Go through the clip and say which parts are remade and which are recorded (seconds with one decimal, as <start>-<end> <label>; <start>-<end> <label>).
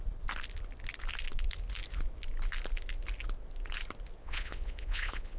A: 0.0-4.2 recorded; 4.2-5.4 remade